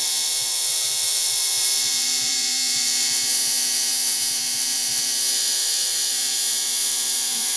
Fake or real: fake